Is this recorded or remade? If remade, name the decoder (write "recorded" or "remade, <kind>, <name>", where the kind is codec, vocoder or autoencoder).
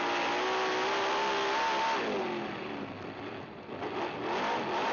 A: recorded